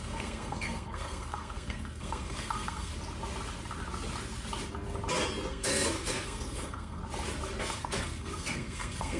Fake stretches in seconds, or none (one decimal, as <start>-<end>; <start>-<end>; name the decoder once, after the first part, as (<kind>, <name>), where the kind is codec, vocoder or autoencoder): 0.0-2.9 (codec, SNAC); 5.5-7.0; 7.6-9.2